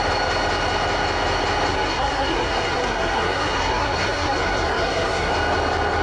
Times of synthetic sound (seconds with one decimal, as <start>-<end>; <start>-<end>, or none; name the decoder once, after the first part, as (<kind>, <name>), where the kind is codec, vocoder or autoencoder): 1.7-5.3 (codec, SNAC)